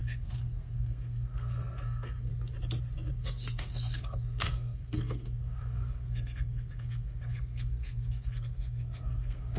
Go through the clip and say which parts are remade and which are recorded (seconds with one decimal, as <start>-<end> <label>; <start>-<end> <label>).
0.0-2.3 remade; 2.3-3.1 recorded; 3.1-9.6 remade